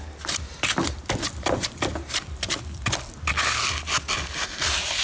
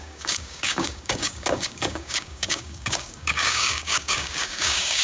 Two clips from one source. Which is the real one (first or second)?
first